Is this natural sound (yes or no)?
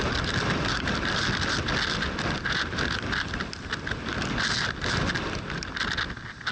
yes